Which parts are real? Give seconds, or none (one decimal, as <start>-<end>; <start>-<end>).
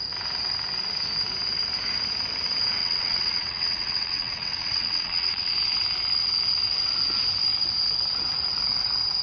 0.0-2.8; 5.5-9.2